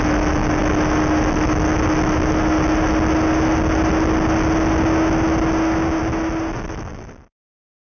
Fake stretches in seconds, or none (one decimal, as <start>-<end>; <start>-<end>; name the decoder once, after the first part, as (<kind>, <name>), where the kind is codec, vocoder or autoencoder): none

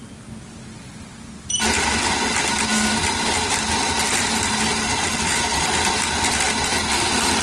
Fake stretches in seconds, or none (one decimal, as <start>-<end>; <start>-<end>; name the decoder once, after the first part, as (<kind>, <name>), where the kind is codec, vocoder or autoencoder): none

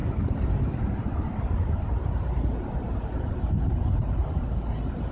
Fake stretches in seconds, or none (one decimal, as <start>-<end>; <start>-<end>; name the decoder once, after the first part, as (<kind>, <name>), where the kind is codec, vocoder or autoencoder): 0.0-0.6 (vocoder, BigVGAN v2); 1.0-4.1

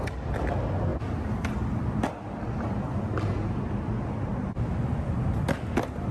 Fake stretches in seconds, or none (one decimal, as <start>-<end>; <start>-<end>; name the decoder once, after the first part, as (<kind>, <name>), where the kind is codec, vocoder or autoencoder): none

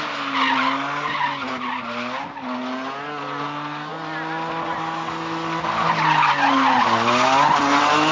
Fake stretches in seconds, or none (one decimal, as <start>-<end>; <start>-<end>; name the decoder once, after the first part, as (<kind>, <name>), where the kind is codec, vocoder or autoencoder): none

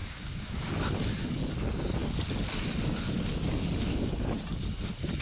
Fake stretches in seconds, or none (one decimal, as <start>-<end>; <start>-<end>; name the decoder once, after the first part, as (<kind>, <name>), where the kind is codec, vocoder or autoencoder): 0.0-0.7 (codec, DAC); 3.9-4.4

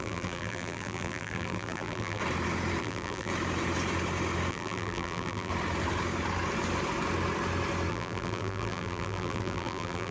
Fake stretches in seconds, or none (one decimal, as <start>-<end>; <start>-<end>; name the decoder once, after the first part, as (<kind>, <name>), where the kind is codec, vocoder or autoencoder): 0.0-2.2 (vocoder, BigVGAN v2); 2.8-3.3; 4.5-5.5; 7.9-10.1